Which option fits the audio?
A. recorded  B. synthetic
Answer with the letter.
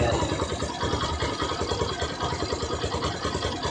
A